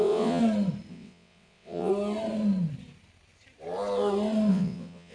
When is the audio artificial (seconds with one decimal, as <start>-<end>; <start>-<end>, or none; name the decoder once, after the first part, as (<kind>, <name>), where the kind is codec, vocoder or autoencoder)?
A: 0.0-0.4 (vocoder, WaveNeXt); 0.9-1.9; 4.5-5.1